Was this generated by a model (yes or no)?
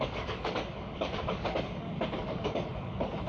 yes